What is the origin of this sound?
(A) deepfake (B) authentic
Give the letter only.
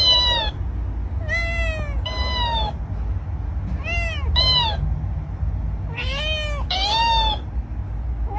B